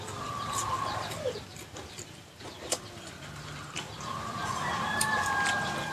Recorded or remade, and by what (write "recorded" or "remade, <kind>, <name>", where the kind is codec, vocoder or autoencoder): remade, vocoder, BigVGAN v2